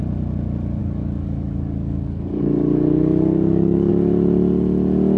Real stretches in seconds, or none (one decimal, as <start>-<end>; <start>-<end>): 0.0-0.8; 3.9-5.2